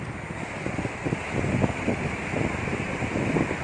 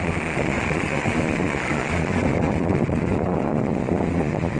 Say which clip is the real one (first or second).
first